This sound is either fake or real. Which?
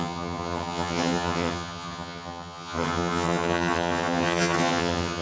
fake